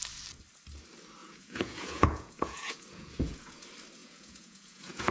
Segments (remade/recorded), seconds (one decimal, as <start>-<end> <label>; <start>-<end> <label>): 0.0-1.2 recorded; 1.2-3.6 remade; 3.6-4.0 recorded; 4.0-5.1 remade